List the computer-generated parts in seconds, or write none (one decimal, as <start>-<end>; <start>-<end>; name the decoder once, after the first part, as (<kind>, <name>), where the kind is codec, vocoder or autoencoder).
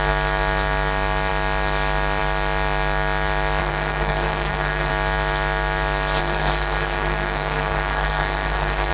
3.6-4.9 (codec, SNAC); 6.2-8.9